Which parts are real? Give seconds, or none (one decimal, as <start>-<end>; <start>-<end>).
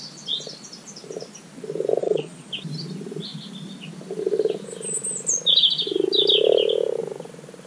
0.0-2.0; 2.5-7.7